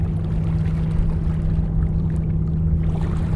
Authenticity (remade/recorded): recorded